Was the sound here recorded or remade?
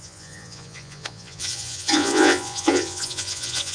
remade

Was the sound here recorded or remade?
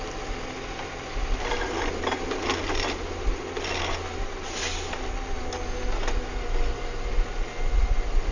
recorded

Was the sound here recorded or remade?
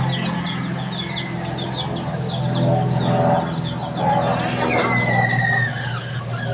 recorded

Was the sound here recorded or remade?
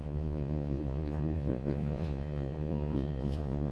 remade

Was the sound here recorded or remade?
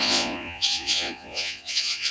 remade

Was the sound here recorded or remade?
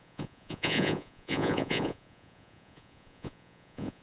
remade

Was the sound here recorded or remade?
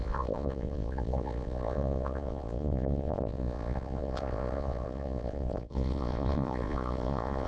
remade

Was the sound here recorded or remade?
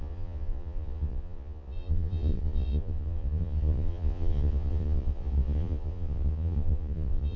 remade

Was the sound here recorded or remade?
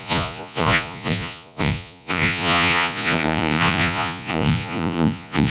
remade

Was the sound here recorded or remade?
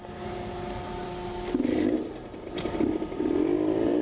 recorded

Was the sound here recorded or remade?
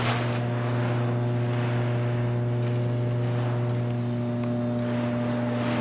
recorded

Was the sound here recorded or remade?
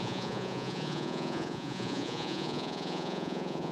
remade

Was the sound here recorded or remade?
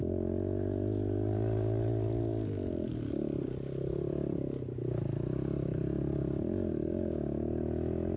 recorded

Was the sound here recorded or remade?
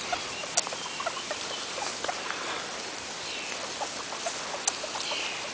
recorded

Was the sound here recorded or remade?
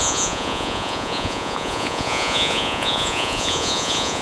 remade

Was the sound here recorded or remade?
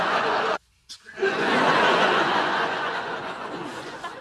remade